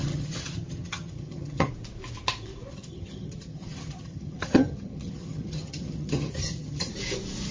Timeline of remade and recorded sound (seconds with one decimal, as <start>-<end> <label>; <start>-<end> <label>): 0.0-1.7 remade; 1.7-2.7 recorded; 2.7-6.9 remade; 6.9-7.5 recorded

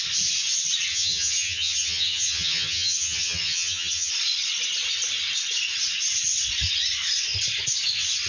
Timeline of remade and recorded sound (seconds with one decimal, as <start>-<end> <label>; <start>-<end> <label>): 0.0-0.9 recorded; 0.9-4.1 remade; 4.1-8.3 recorded

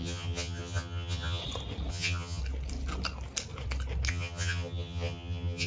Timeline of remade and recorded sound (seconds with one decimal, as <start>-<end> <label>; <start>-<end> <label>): 0.0-1.4 remade; 1.4-1.9 recorded; 1.9-2.4 remade; 2.4-4.1 recorded; 4.1-5.7 remade

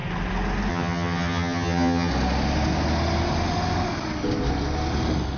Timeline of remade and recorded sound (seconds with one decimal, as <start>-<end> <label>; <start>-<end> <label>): 0.0-0.7 recorded; 0.7-2.1 remade; 2.1-5.4 recorded